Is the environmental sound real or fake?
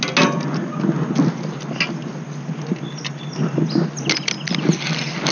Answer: real